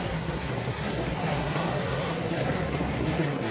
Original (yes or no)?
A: no